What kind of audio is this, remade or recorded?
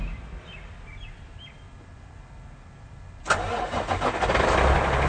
recorded